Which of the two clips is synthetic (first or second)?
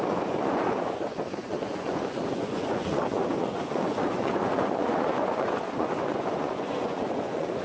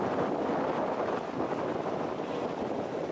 first